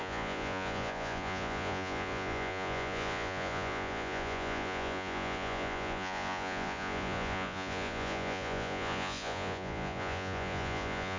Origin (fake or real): fake